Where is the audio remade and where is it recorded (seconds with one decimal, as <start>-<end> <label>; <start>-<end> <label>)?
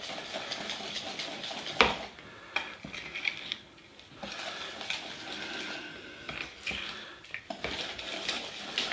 0.0-8.9 recorded